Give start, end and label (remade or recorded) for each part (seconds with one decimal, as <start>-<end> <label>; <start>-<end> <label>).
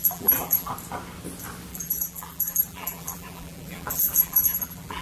0.0-0.7 remade; 0.7-1.7 recorded; 1.7-5.0 remade